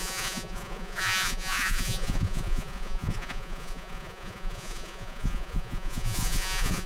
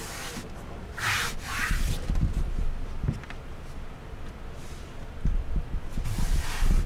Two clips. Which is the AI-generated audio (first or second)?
first